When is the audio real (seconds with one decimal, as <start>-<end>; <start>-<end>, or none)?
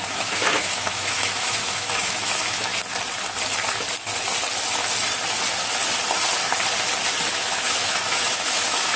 2.7-7.3